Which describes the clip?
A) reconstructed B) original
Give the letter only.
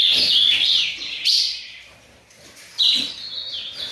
B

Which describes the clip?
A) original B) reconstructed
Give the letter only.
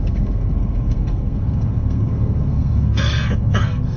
B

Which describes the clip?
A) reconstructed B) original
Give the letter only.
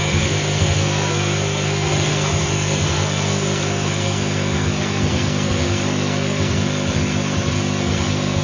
A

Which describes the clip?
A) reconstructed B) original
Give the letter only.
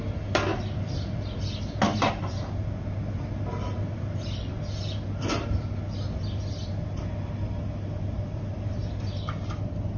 B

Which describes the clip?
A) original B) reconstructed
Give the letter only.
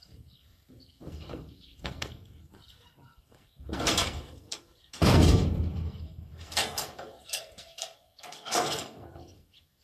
B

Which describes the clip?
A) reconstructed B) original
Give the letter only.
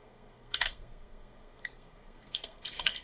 A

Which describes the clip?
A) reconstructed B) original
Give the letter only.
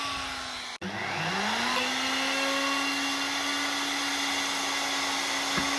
B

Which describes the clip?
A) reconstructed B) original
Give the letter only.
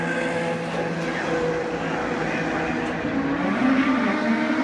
B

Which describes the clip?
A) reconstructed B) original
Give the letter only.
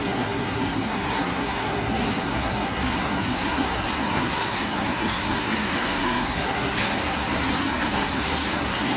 A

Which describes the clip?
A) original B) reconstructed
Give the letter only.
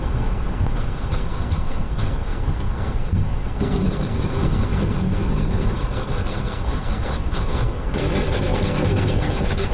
B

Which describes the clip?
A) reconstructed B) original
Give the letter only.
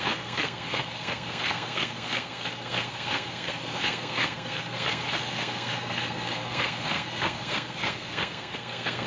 A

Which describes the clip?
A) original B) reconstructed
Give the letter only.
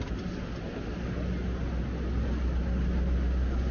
A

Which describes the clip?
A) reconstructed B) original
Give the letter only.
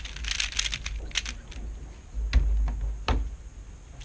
B